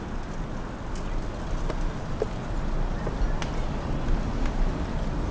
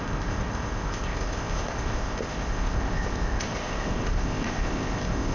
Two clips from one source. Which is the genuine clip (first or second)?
first